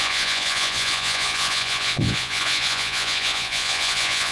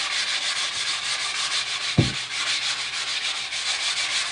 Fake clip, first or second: first